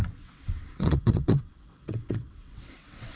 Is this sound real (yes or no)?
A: no